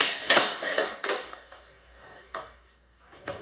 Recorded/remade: remade